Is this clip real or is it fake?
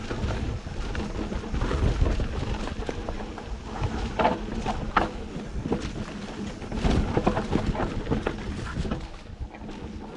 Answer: real